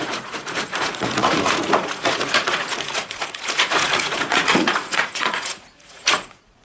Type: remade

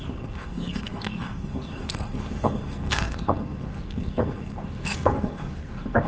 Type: remade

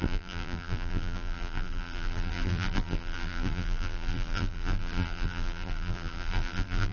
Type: remade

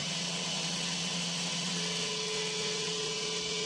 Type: remade